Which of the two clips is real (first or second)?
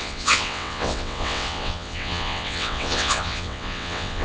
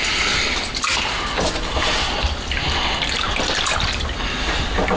second